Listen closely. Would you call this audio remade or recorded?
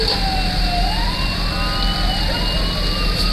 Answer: recorded